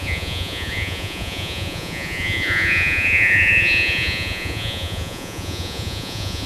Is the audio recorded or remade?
remade